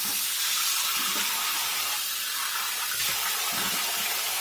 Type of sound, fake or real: real